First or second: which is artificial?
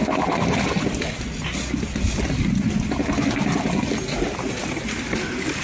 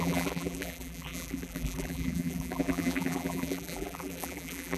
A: second